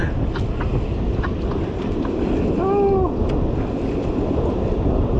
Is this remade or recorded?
recorded